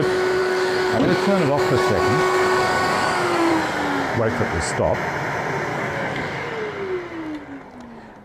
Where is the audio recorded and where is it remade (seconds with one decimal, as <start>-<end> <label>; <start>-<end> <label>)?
0.0-0.4 recorded; 0.4-3.5 remade; 3.5-5.7 recorded; 5.7-6.6 remade; 6.6-8.2 recorded